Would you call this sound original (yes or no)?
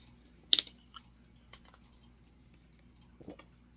yes